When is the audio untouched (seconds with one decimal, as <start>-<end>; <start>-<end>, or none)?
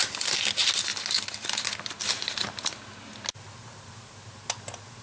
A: 0.0-5.0